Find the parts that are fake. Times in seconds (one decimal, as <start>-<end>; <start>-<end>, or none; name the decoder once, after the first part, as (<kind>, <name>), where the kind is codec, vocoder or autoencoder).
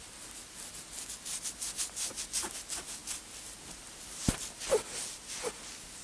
none